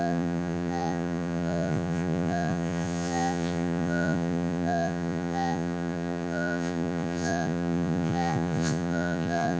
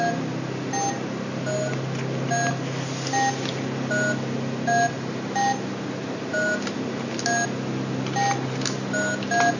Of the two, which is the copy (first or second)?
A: first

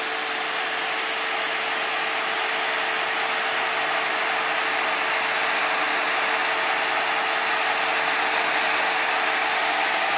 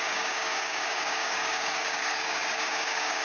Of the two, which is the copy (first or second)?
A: second